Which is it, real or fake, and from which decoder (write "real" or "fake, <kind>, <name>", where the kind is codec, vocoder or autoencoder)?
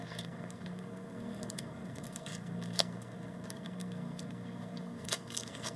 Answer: fake, codec, SNAC